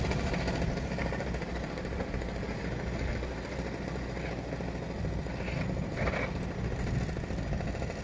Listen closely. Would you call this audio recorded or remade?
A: recorded